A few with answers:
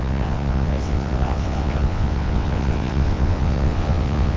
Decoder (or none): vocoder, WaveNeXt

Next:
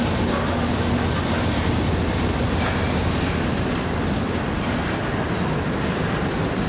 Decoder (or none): none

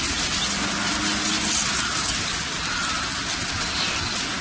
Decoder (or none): none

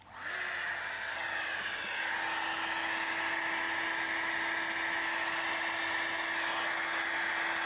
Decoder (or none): none